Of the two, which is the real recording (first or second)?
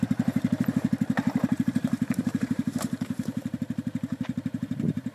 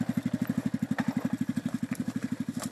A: second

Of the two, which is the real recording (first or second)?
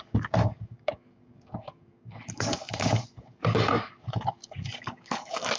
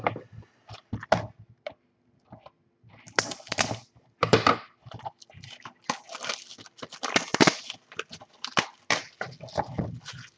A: second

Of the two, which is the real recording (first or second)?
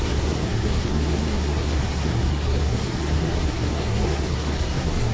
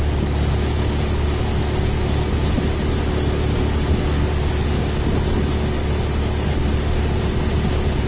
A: second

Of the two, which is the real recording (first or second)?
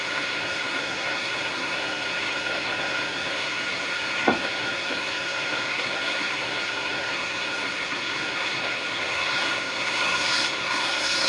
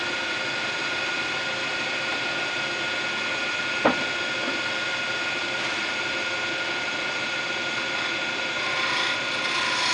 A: second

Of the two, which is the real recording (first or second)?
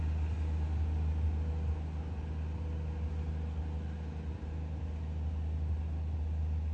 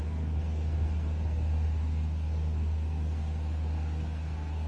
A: first